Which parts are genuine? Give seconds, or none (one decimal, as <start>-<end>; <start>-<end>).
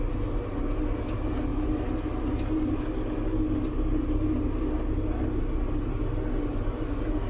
0.0-7.3